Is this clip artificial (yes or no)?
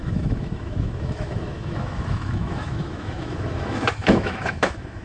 yes